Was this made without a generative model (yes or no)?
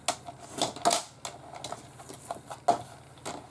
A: yes